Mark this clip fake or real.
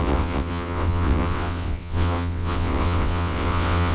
fake